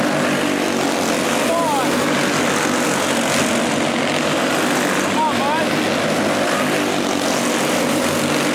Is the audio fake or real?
real